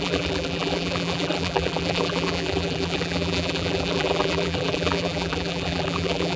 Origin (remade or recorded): remade